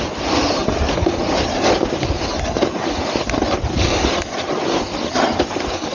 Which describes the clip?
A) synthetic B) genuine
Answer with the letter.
B